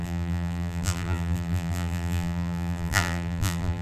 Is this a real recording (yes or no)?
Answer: no